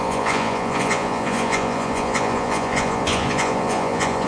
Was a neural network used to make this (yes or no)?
yes